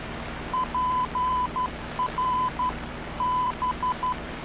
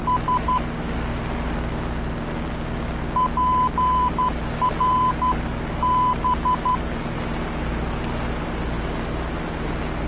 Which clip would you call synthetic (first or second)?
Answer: first